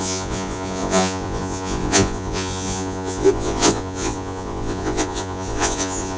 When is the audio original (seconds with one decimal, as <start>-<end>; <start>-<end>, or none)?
none